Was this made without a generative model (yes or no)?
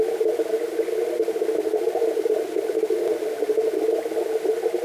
yes